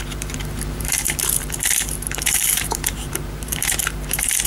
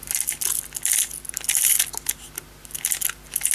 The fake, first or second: first